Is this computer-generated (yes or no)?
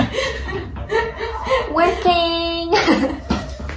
no